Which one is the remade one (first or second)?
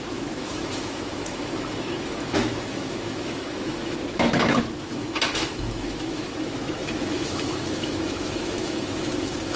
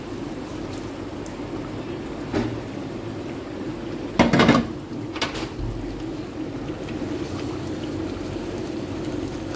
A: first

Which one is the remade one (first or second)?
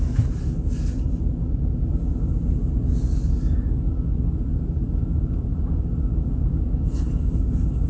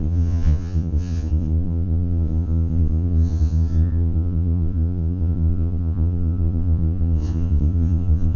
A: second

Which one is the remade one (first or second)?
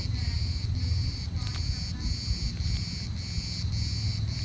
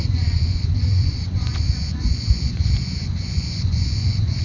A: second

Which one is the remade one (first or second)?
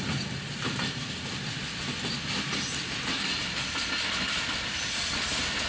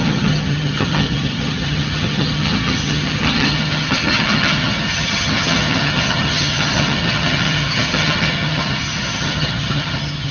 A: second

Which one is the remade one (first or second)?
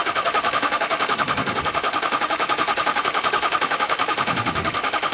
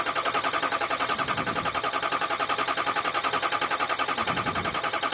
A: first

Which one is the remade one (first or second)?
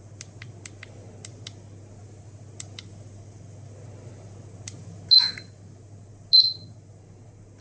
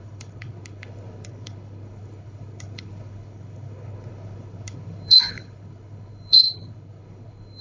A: second